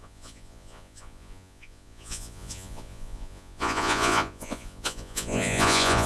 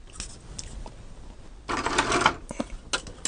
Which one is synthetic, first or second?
first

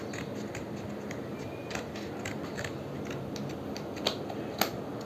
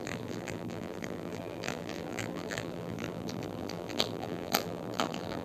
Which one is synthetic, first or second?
second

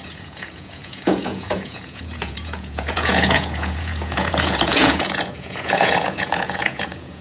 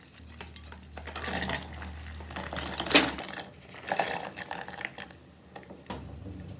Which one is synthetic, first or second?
first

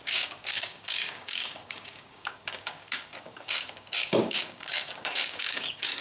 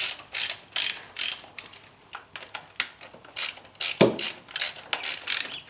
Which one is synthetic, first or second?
first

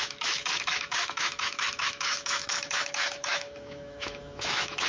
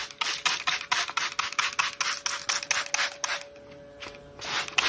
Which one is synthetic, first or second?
first